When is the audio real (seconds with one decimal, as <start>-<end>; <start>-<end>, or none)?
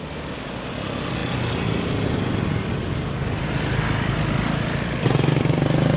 0.0-6.0